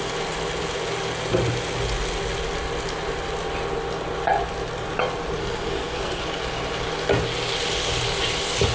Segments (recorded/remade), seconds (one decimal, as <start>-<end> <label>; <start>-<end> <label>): 0.0-5.4 recorded; 5.4-6.2 remade; 6.2-8.7 recorded